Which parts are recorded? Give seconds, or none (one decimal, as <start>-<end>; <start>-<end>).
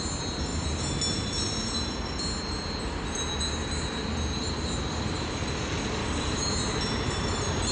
0.0-6.0; 6.5-7.7